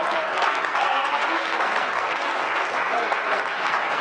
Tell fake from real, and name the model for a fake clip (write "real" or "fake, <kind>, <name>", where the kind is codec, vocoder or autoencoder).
fake, codec, SNAC